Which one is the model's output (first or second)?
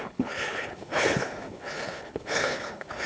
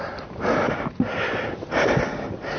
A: first